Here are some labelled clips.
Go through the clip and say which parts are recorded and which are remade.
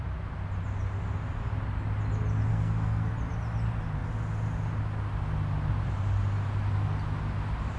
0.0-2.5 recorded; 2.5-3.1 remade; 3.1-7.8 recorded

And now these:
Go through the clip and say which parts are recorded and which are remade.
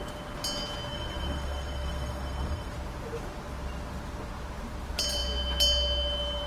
0.0-0.9 recorded; 0.9-2.7 remade; 2.7-6.5 recorded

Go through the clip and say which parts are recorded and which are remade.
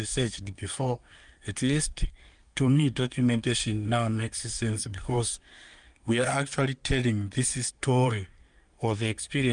0.0-6.3 remade; 6.3-7.7 recorded; 7.7-9.5 remade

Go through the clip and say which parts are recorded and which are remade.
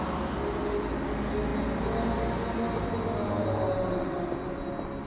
0.0-5.1 recorded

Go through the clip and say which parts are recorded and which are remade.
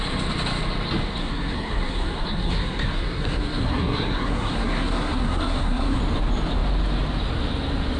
0.0-1.2 recorded; 1.2-6.0 remade; 6.0-8.0 recorded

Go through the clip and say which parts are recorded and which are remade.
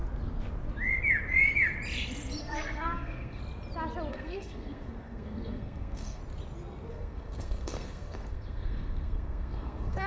0.0-2.4 recorded; 2.4-3.4 remade; 3.4-4.1 recorded; 4.1-6.2 remade; 6.2-6.9 recorded; 6.9-10.1 remade